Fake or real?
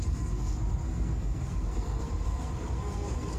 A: fake